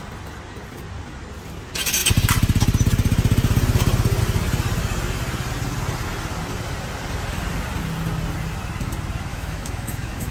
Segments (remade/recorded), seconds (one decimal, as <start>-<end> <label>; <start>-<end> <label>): 0.0-9.3 recorded; 9.3-10.3 remade